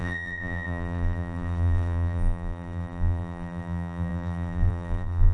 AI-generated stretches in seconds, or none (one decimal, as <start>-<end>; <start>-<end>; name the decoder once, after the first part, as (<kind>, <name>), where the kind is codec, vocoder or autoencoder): 0.0-5.3 (vocoder, BigVGAN v2)